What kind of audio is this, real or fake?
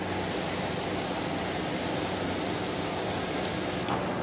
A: real